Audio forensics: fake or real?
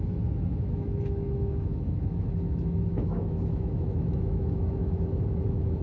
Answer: fake